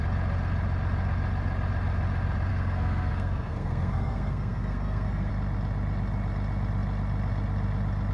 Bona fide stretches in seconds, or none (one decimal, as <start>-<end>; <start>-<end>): 0.0-2.5; 5.3-8.1